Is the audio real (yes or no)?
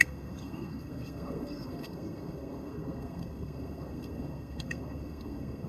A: no